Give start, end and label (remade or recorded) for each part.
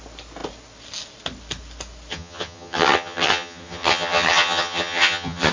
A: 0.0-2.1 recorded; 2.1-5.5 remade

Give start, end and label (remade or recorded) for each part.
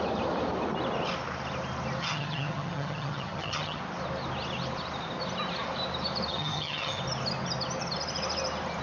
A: 0.0-2.0 recorded; 2.0-3.8 remade; 3.8-6.3 recorded; 6.3-7.0 remade; 7.0-8.8 recorded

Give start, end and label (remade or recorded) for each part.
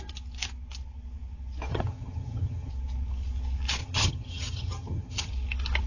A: 0.0-1.7 recorded; 1.7-2.7 remade; 2.7-3.8 recorded; 3.8-5.3 remade; 5.3-5.9 recorded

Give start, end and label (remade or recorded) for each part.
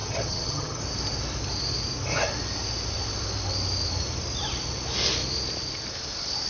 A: 0.0-0.8 remade; 0.8-6.5 recorded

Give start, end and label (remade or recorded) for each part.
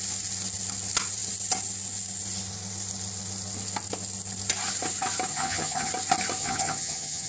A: 0.0-5.3 recorded; 5.3-5.9 remade; 5.9-6.4 recorded; 6.4-7.3 remade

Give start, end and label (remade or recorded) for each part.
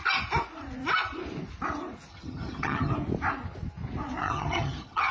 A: 0.0-2.1 recorded; 2.1-2.9 remade; 2.9-4.2 recorded; 4.2-5.1 remade